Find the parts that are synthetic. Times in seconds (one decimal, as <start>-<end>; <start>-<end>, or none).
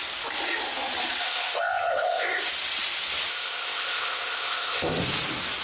1.2-2.5; 3.3-5.0